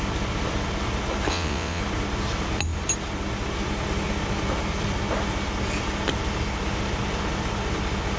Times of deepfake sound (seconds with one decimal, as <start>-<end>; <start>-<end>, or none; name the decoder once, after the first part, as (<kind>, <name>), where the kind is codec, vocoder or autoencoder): 1.3-1.8 (vocoder, WaveNeXt)